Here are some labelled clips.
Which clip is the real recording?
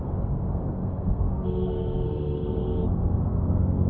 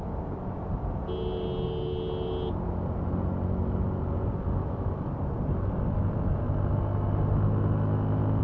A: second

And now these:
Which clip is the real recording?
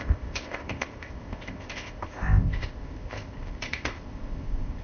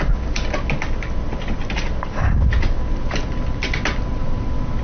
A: second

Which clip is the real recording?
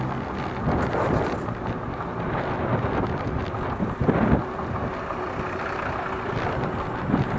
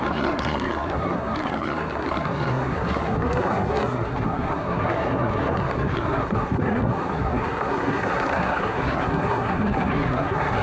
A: first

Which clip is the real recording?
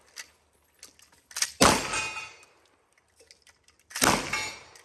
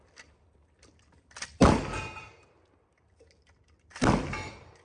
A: first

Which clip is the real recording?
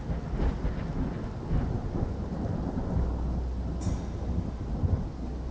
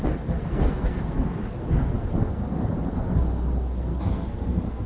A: first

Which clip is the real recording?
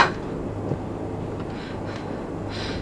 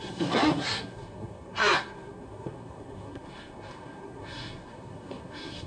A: first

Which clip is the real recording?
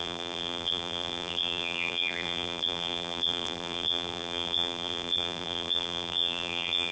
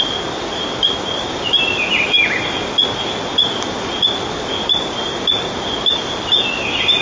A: second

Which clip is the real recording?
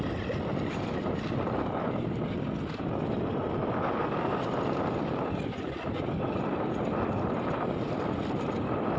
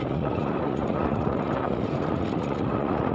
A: first